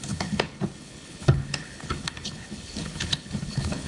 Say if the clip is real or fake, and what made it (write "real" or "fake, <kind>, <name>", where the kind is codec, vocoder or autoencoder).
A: fake, codec, HILCodec